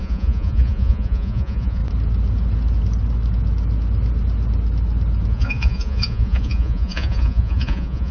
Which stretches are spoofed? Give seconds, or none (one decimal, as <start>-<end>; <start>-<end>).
0.0-1.8; 5.3-8.1